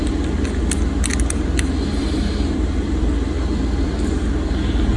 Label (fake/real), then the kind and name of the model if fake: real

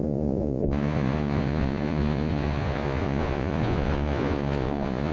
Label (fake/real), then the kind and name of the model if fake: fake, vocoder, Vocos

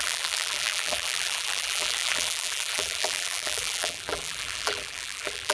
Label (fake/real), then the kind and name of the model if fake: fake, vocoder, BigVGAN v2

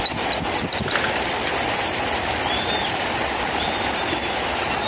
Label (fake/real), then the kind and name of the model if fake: real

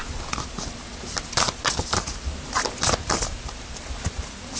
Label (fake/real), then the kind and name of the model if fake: real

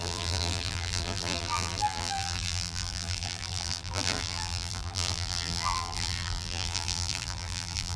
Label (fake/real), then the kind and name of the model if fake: fake, vocoder, BigVGAN v2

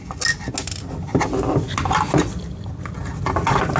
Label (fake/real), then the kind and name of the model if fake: real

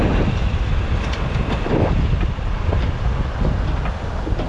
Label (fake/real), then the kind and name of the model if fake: real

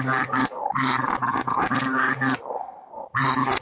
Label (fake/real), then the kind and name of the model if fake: real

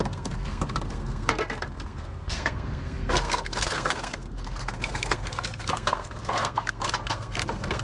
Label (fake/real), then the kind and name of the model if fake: fake, codec, SNAC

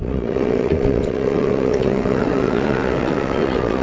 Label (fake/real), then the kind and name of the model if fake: fake, vocoder, WaveNeXt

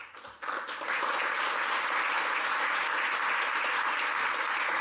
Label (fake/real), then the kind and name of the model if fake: real